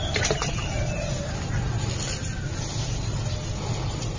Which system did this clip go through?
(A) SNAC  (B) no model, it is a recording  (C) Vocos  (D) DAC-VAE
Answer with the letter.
B